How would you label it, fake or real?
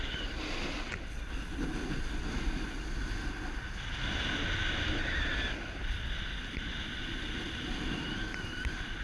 real